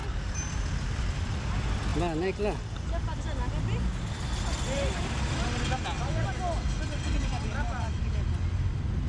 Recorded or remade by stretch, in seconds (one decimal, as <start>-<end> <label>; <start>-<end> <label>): 0.0-9.1 recorded